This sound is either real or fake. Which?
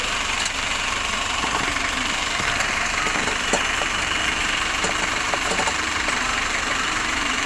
fake